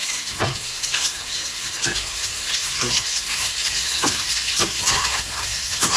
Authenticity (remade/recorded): remade